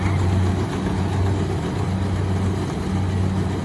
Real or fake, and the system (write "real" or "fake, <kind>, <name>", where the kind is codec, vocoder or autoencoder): real